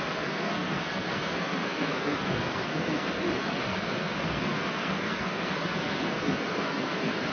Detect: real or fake fake